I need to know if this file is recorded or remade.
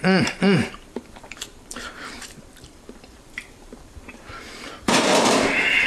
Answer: remade